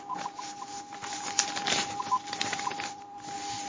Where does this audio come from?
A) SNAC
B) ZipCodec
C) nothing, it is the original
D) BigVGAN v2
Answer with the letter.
D